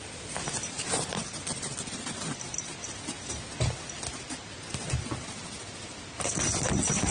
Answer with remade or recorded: recorded